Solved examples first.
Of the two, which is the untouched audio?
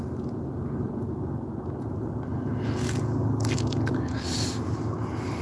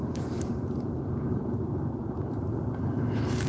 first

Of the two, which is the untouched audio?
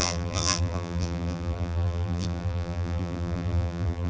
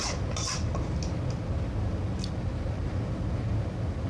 second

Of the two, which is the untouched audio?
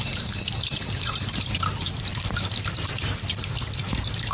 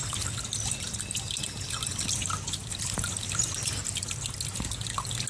second